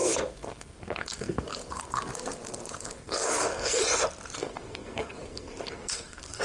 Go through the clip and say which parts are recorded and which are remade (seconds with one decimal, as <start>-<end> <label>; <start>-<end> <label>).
0.0-3.8 remade; 3.8-4.4 recorded; 4.4-6.4 remade